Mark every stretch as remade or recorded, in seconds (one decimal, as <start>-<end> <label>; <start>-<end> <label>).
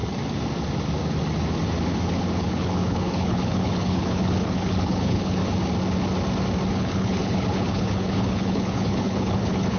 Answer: 0.0-2.4 recorded; 2.4-5.4 remade; 5.4-6.7 recorded; 6.7-9.8 remade